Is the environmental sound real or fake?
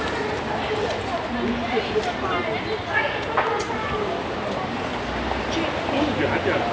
real